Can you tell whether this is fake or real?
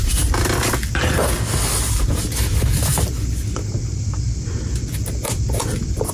real